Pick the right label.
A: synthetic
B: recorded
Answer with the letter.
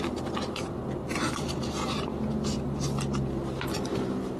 A